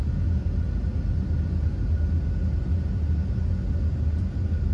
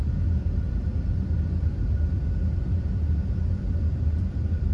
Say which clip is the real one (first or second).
first